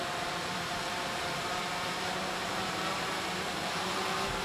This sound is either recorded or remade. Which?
remade